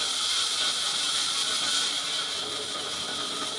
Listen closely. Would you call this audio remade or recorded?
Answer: recorded